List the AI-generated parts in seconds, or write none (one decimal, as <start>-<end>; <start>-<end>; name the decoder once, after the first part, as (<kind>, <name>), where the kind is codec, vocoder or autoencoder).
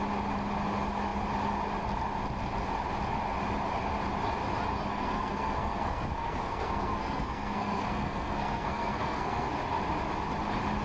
4.9-9.6 (codec, SNAC)